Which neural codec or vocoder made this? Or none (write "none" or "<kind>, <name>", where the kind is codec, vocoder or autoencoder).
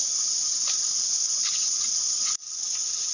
vocoder, BigVGAN v2